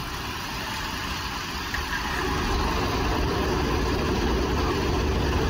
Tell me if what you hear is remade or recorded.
recorded